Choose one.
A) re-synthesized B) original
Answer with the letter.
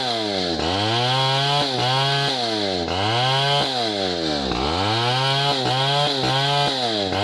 B